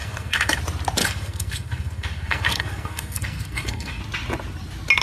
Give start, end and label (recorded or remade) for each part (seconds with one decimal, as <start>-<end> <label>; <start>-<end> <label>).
0.0-0.6 remade; 0.6-1.0 recorded; 1.0-4.0 remade; 4.0-5.0 recorded